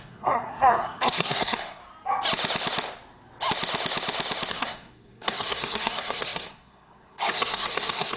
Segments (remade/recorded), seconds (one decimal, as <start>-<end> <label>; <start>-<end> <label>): 0.0-1.8 remade; 1.8-4.5 recorded; 4.5-8.2 remade